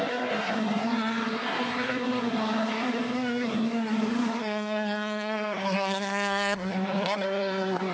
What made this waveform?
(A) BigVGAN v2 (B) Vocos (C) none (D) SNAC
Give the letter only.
D